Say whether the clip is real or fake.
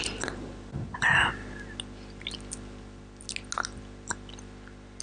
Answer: real